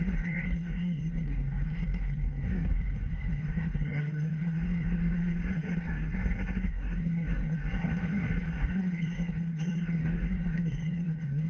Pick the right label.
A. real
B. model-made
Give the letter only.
B